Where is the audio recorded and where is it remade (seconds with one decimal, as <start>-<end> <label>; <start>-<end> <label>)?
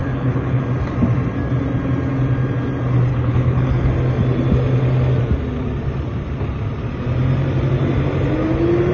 0.0-0.6 remade; 0.6-3.1 recorded; 3.1-3.9 remade; 3.9-8.9 recorded